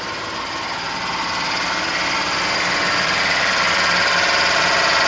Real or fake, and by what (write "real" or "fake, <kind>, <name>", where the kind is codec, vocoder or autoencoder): real